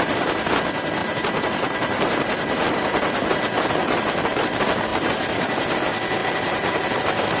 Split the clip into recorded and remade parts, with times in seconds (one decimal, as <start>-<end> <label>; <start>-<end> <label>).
0.0-1.0 recorded; 1.0-4.4 remade; 4.4-4.9 recorded; 4.9-5.7 remade; 5.7-6.2 recorded; 6.2-7.0 remade; 7.0-7.4 recorded